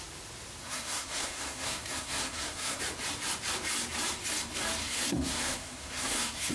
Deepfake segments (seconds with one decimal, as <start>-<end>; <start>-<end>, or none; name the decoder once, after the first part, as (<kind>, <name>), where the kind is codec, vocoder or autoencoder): 0.6-2.8 (codec, SNAC); 4.8-6.5